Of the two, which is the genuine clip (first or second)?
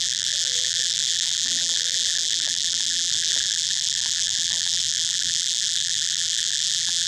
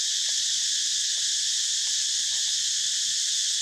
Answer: second